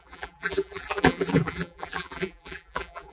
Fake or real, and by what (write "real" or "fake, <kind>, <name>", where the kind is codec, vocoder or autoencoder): fake, vocoder, BigVGAN v2